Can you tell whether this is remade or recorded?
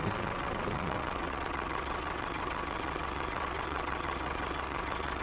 remade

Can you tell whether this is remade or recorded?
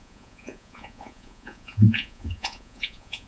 remade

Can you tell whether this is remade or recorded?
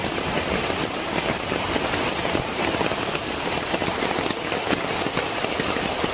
recorded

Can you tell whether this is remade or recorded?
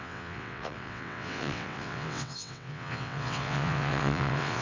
remade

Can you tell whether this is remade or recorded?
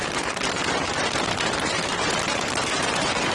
remade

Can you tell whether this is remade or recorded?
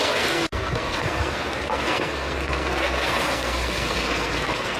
remade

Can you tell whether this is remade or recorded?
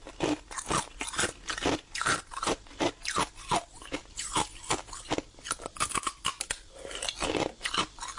recorded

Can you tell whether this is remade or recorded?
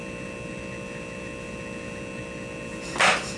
recorded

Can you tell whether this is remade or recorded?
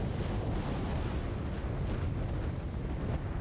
recorded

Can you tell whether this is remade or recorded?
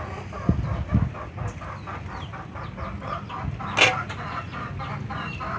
recorded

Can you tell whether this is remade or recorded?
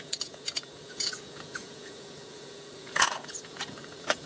remade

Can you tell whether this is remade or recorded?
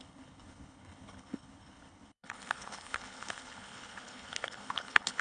remade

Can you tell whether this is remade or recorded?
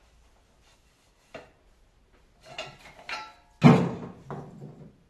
recorded